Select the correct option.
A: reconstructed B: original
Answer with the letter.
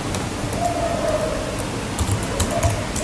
B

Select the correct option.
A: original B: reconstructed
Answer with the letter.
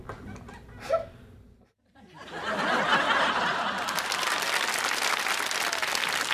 A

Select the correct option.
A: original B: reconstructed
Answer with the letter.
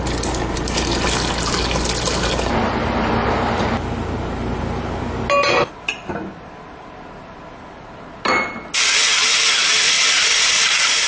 A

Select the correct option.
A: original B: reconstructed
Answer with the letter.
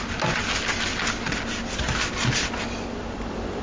A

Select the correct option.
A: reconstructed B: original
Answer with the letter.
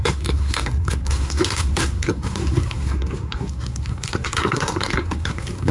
A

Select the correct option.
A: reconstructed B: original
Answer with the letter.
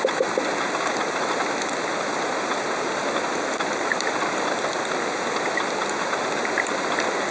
B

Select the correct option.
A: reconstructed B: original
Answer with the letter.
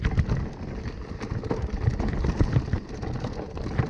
B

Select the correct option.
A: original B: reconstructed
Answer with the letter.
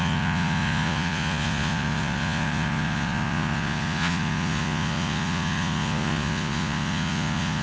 B